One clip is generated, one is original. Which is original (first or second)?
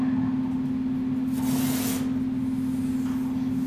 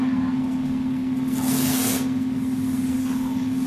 first